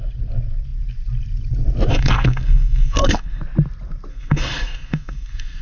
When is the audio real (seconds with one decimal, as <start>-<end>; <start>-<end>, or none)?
0.0-1.9; 3.4-4.1